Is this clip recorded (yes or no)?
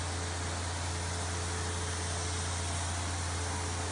yes